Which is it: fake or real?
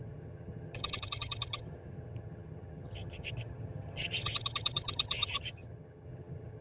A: fake